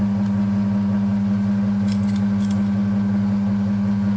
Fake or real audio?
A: real